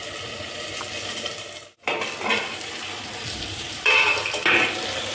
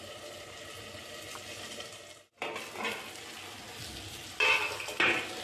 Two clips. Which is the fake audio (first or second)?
first